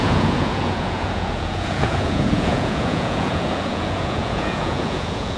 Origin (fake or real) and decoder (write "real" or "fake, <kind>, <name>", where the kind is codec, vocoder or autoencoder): fake, vocoder, Vocos